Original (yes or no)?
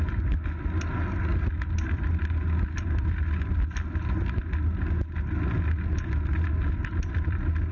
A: yes